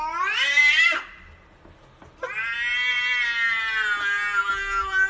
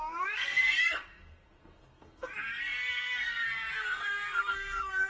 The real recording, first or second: first